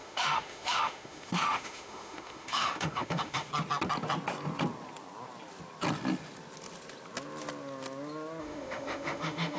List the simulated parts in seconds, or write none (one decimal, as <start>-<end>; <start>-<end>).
0.0-3.5; 8.4-9.6